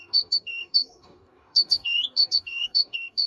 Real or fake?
fake